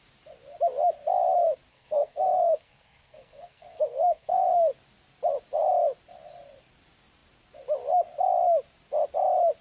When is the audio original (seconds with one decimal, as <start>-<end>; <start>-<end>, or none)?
0.0-1.7; 4.7-9.6